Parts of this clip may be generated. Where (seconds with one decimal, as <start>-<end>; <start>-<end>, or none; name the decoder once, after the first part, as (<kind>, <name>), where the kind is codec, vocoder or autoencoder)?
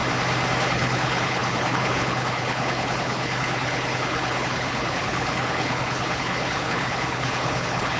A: 0.6-8.0 (codec, HILCodec)